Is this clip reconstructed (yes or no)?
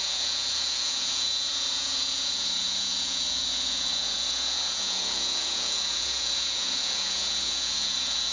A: yes